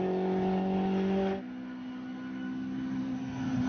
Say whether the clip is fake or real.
real